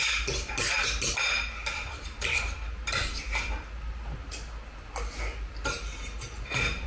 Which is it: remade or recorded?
recorded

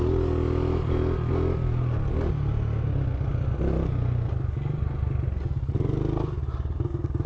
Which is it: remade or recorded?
recorded